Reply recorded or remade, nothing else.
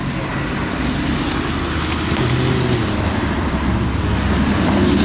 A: recorded